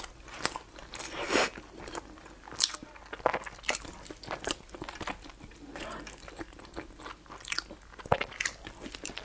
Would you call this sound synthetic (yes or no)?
no